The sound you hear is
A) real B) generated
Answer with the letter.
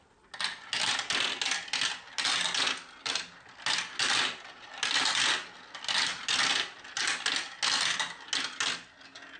A